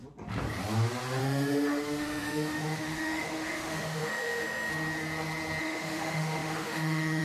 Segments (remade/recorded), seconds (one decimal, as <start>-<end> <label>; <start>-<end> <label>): 0.0-1.2 recorded; 1.2-4.7 remade; 4.7-5.6 recorded; 5.6-7.2 remade